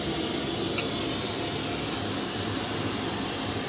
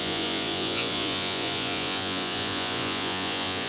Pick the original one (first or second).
first